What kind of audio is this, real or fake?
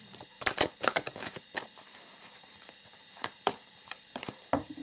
fake